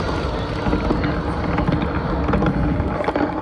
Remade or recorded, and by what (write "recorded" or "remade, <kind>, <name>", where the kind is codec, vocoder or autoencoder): recorded